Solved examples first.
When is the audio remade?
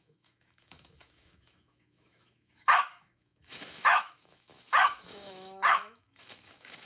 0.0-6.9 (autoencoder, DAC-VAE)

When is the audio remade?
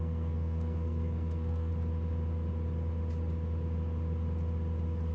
0.0-1.7 (codec, SNAC)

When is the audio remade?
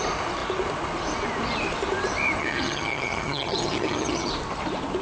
2.4-4.3 (vocoder, HiFi-GAN)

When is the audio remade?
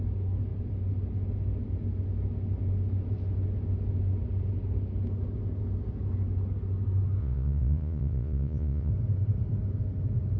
7.2-8.9 (vocoder, Vocos)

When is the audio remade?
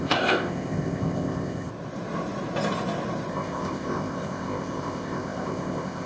0.0-1.7 (codec, ZipCodec); 3.3-6.1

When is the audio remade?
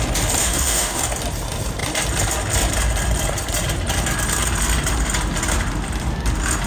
0.4-1.0 (autoencoder, DAC-VAE)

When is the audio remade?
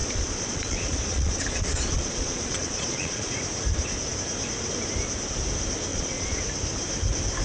0.0-3.3 (vocoder, Vocos); 5.9-6.4